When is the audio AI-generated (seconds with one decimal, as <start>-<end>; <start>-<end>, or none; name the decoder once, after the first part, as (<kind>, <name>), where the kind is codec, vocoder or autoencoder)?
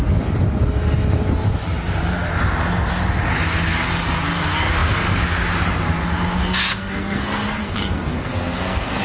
6.6-9.0 (codec, SNAC)